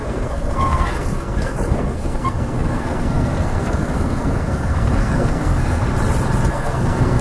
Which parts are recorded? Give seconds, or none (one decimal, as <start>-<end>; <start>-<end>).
5.9-6.5